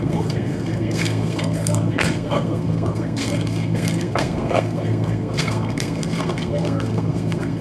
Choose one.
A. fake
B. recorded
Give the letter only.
A